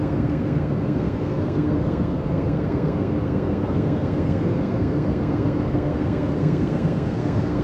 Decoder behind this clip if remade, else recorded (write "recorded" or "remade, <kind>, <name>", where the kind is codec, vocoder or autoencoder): remade, codec, SNAC